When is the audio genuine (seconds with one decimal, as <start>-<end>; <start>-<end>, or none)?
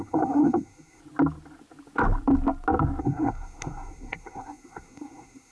1.0-3.0